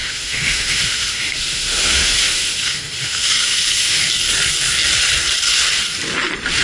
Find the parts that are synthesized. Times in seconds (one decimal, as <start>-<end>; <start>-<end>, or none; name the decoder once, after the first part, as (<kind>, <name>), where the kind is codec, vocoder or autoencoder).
0.0-4.0 (autoencoder, DAC-VAE)